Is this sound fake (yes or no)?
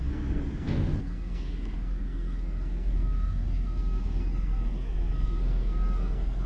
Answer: yes